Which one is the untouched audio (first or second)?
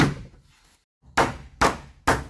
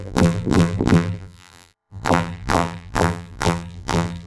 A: first